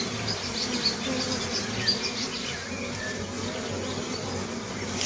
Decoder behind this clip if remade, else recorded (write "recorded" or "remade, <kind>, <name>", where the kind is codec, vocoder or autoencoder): recorded